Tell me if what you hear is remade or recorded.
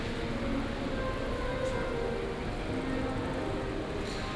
recorded